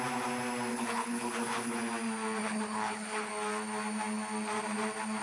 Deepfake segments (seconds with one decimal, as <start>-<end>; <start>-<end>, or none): 0.7-1.8; 2.4-3.3